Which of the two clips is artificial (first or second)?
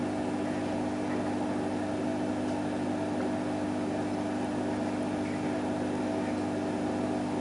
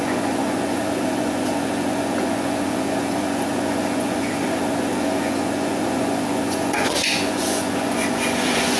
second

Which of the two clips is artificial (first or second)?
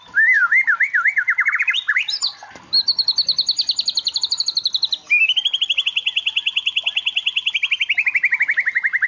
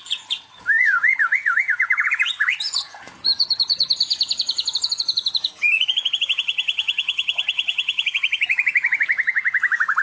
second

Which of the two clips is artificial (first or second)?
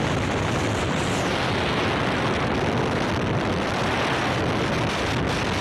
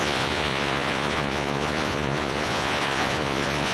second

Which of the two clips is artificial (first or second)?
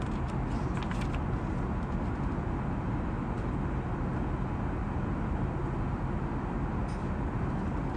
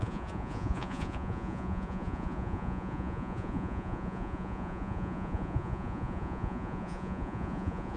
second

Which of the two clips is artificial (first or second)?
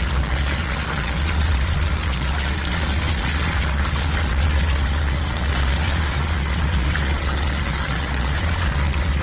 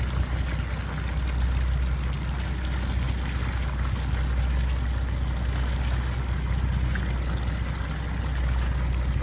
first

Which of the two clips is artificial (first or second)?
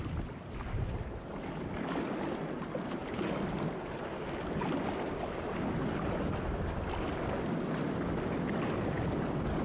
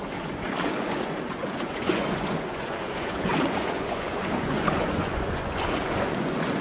second